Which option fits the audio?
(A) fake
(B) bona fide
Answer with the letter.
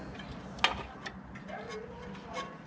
B